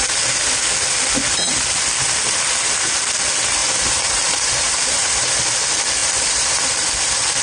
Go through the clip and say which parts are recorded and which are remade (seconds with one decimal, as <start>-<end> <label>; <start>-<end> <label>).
0.0-3.6 recorded; 3.6-5.4 remade; 5.4-6.0 recorded; 6.0-6.7 remade; 6.7-7.4 recorded